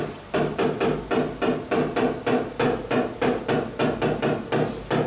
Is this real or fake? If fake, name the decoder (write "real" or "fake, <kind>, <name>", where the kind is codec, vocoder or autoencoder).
real